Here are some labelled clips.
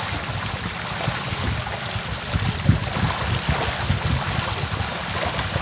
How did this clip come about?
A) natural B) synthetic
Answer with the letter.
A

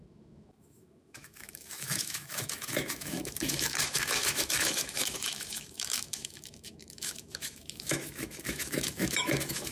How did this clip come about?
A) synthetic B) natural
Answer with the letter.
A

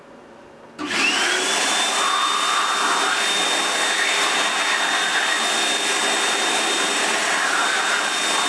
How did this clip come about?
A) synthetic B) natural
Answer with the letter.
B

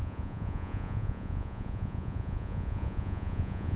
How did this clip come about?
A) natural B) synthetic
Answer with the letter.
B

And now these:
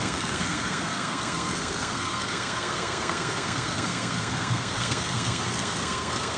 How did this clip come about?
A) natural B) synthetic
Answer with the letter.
B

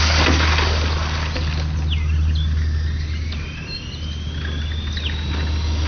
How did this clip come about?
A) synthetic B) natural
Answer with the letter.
B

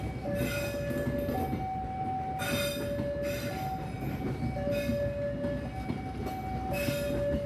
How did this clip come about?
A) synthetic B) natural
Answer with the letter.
B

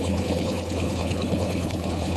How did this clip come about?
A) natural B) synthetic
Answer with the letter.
B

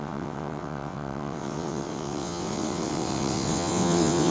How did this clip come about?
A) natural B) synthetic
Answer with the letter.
B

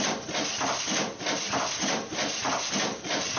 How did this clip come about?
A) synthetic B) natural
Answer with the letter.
B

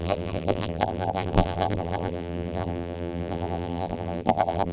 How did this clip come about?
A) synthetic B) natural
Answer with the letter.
A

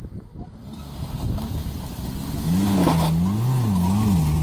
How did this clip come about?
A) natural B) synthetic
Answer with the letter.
A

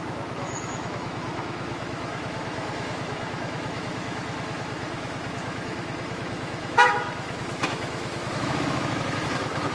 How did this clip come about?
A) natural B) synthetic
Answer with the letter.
B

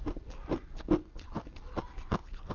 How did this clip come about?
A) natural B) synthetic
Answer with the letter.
A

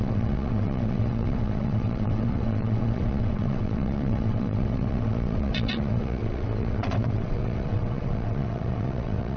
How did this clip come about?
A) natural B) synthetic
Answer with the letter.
B